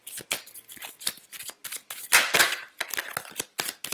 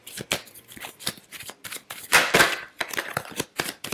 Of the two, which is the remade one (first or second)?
second